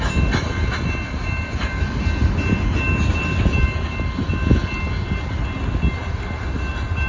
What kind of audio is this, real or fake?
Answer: real